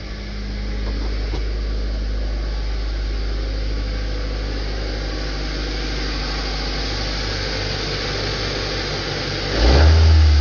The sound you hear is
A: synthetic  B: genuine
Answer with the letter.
B